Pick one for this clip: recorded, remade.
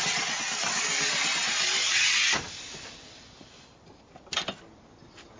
recorded